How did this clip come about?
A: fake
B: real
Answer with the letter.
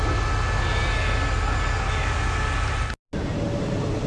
B